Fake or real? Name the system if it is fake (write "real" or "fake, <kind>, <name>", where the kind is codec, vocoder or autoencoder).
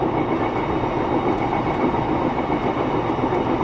real